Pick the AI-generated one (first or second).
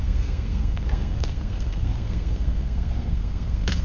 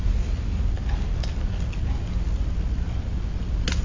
first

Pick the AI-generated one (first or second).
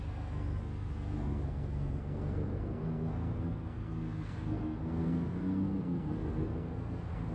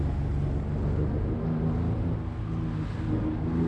first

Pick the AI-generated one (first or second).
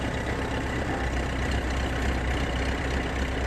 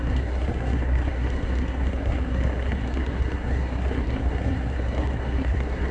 second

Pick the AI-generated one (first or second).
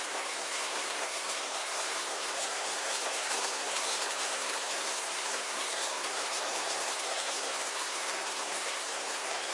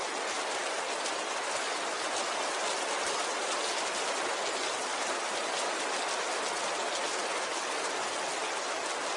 first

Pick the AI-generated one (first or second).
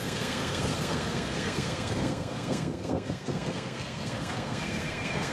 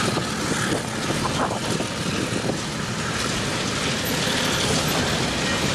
first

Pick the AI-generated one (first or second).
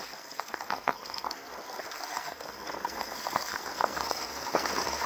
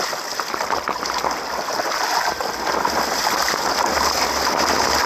first